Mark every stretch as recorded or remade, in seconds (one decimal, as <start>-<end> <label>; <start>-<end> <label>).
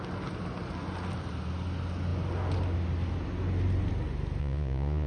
0.0-4.4 recorded; 4.4-5.1 remade